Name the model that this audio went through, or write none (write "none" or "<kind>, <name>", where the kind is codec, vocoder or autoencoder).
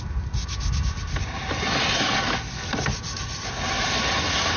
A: none